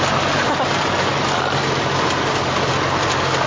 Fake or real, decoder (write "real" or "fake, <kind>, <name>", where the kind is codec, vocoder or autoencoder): real